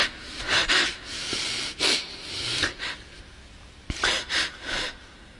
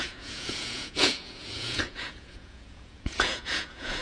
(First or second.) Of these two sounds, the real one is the first